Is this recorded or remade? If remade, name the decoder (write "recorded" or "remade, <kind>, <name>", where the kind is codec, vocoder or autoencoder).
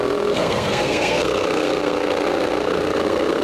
remade, codec, SNAC